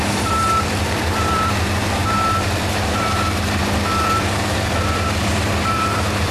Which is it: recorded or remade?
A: remade